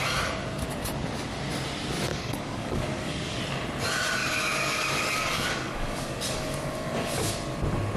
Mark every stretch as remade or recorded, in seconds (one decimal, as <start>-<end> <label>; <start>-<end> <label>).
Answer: 0.0-2.1 recorded; 2.1-3.4 remade; 3.4-4.2 recorded; 4.2-7.3 remade; 7.3-8.0 recorded